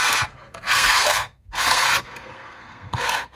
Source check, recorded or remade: remade